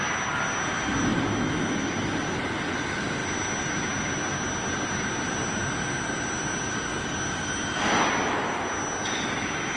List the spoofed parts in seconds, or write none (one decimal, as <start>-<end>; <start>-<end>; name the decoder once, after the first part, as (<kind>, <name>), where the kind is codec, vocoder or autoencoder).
none

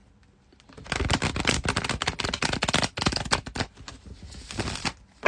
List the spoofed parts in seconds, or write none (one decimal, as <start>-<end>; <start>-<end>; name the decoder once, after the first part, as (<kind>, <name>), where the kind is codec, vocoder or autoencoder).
0.0-3.2 (vocoder, BigVGAN v2)

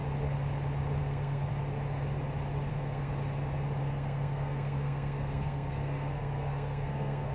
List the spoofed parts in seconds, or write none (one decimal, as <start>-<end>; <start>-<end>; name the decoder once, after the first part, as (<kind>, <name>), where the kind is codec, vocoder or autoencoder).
1.0-1.5 (codec, SNAC); 2.7-3.1; 3.8-7.3

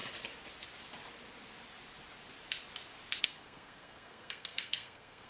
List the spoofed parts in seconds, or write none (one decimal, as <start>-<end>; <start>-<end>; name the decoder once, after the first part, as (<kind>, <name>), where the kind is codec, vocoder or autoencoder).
3.2-5.3 (codec, SNAC)

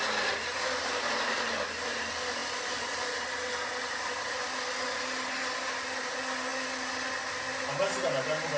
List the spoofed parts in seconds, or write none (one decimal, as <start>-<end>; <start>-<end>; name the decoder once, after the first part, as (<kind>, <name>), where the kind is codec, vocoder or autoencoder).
none

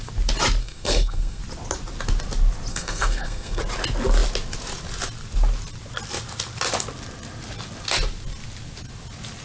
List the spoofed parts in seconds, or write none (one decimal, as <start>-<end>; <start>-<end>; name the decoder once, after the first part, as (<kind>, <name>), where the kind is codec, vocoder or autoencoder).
0.6-1.4 (codec, SNAC); 2.7-3.6

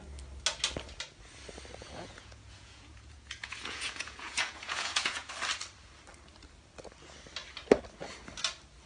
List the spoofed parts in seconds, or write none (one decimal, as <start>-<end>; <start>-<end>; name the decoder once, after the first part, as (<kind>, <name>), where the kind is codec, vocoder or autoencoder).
1.8-5.3 (vocoder, Vocos)

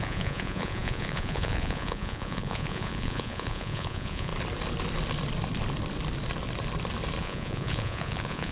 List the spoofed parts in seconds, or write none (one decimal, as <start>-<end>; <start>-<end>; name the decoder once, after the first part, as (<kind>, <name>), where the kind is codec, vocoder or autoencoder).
0.0-4.3 (vocoder, Vocos); 7.2-8.5